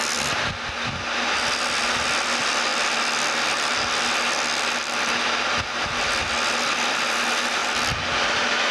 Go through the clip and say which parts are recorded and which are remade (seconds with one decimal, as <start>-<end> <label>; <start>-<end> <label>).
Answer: 0.0-8.7 recorded